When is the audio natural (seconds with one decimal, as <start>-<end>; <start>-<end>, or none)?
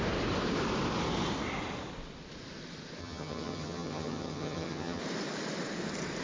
0.0-3.0; 5.0-6.2